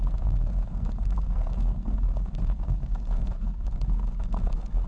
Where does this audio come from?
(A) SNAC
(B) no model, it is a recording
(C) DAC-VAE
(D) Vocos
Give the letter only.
A